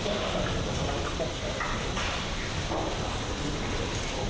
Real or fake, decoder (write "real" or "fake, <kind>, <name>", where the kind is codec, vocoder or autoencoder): real